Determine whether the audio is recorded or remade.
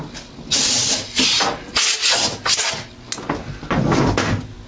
recorded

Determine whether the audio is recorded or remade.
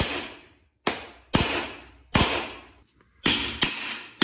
recorded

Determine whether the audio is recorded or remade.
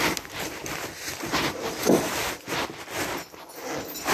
recorded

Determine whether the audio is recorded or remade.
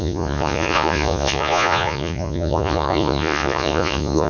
remade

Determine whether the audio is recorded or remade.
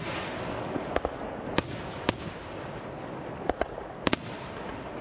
recorded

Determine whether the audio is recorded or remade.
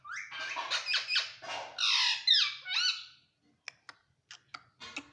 recorded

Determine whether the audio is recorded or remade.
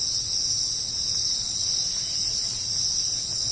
recorded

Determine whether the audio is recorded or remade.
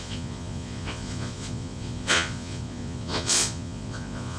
remade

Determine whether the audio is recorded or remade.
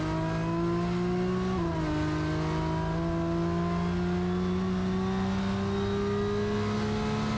recorded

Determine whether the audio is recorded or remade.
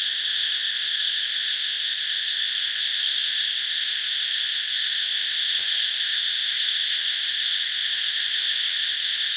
remade